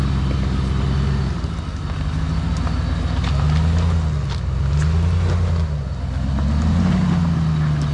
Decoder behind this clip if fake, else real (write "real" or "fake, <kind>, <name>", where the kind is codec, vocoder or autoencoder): real